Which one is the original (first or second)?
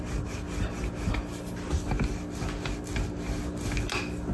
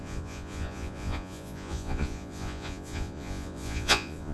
first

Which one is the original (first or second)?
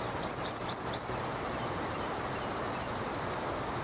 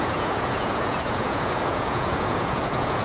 first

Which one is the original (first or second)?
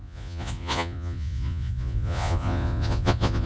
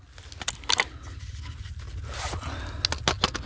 second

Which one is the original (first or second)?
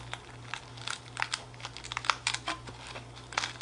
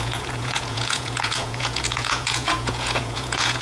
first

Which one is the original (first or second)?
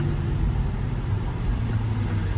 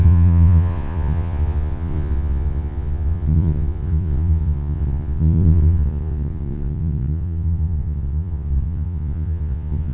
first